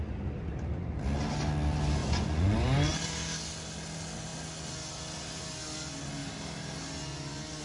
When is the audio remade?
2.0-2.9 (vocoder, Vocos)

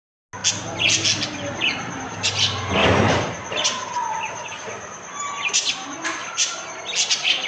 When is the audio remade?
2.8-6.8 (vocoder, BigVGAN v2)

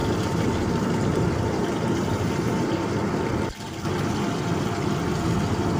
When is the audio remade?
0.0-2.9 (vocoder, BigVGAN v2)

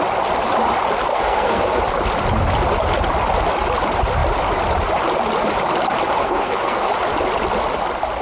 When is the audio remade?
1.1-1.8 (codec, SNAC); 6.2-6.9